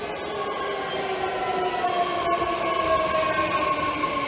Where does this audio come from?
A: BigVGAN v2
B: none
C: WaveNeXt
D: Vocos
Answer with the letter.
B